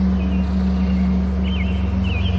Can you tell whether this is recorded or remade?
recorded